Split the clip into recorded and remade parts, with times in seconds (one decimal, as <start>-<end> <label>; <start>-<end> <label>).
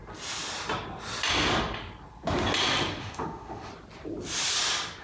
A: 0.0-3.0 recorded; 3.0-3.7 remade; 3.7-5.0 recorded